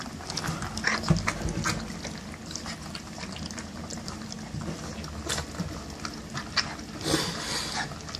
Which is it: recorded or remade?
recorded